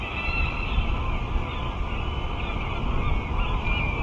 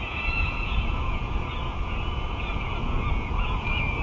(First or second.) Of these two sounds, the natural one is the first